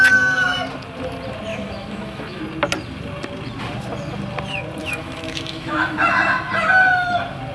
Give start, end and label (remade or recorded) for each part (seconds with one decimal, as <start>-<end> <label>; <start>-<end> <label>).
0.0-1.5 recorded; 1.5-2.4 remade; 2.4-4.8 recorded; 4.8-6.0 remade; 6.0-7.5 recorded